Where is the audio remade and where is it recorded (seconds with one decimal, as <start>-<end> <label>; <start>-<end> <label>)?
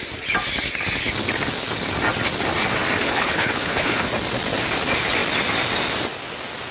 0.0-3.0 recorded; 3.0-4.1 remade; 4.1-6.7 recorded